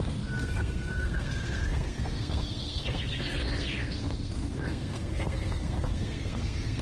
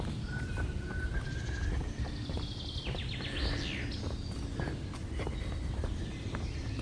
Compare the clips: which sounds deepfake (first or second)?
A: first